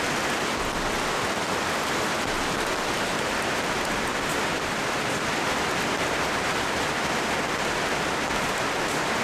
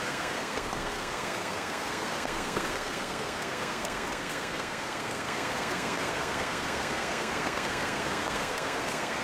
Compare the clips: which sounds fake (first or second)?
second